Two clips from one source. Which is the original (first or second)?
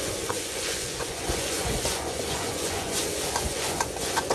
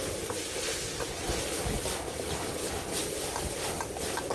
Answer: second